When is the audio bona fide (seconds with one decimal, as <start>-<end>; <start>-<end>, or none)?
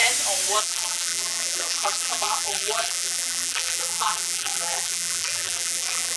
0.0-0.6